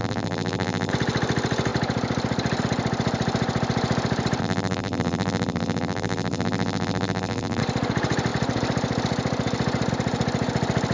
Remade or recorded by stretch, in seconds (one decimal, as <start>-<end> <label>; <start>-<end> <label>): 0.0-0.9 remade; 0.9-4.4 recorded; 4.4-7.6 remade; 7.6-10.9 recorded